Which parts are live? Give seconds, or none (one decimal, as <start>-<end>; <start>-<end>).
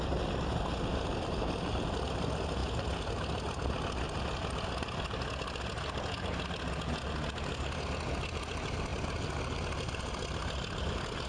0.0-11.3